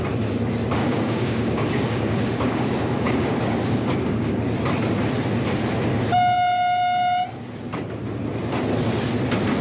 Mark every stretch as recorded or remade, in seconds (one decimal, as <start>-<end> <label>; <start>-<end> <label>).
0.0-0.8 recorded; 0.8-4.3 remade; 4.3-9.6 recorded

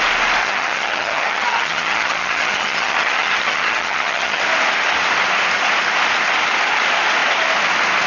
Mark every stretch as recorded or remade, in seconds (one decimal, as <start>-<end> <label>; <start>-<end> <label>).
0.0-0.4 recorded; 0.4-4.4 remade; 4.4-8.1 recorded

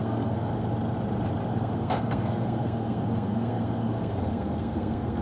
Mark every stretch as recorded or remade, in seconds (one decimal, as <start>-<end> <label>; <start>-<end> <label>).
0.0-0.5 remade; 0.5-1.5 recorded; 1.5-5.2 remade

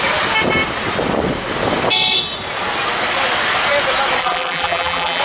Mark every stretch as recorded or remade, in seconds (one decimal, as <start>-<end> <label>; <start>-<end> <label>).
0.0-4.2 recorded; 4.2-5.2 remade